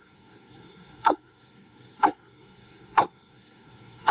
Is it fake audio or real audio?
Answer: fake